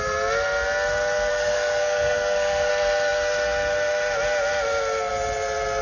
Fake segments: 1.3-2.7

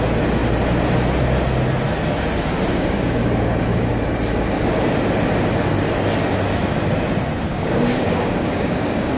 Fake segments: 2.7-3.9; 7.5-9.2

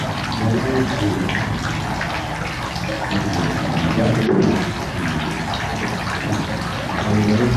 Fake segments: none

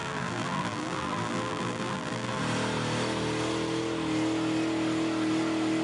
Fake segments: 0.0-2.4

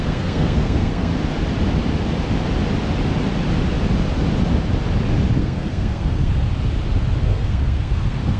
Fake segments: 0.0-1.1; 5.4-6.5; 7.2-8.4

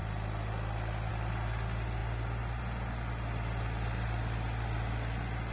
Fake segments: none

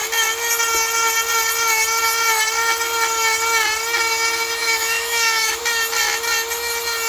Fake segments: 4.6-5.6

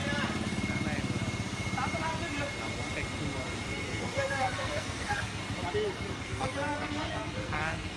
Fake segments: 3.7-5.4; 6.1-8.0